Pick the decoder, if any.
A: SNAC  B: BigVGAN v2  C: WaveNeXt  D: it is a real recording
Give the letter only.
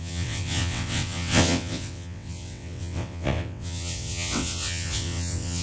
C